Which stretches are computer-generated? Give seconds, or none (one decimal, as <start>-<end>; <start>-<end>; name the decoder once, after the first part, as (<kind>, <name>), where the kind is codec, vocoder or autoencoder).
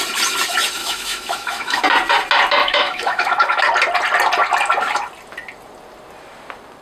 0.8-1.8 (autoencoder, DAC-VAE); 2.6-3.6